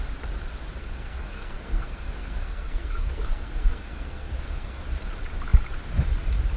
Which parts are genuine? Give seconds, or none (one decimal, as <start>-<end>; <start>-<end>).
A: 0.0-0.8; 4.8-6.6